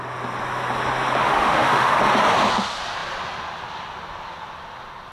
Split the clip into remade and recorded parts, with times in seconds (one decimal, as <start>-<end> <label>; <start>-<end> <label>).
0.0-1.2 recorded; 1.2-2.0 remade; 2.0-5.1 recorded